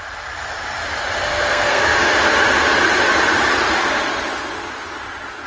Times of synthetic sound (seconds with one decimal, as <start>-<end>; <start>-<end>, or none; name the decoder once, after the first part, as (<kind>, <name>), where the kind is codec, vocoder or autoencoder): 1.3-1.8 (codec, SNAC)

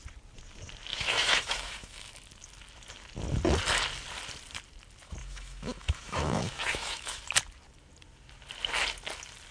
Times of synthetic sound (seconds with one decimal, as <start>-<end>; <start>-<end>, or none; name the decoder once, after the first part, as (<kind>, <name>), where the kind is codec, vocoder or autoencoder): 0.9-2.1 (autoencoder, DAC-VAE); 5.2-7.2

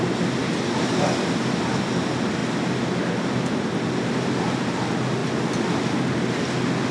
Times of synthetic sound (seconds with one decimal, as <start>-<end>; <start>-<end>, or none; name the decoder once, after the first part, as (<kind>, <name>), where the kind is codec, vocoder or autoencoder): none

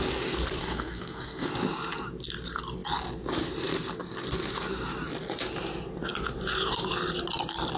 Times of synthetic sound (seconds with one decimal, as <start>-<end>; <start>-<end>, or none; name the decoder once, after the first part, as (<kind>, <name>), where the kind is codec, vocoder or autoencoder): 0.6-1.5 (codec, SNAC)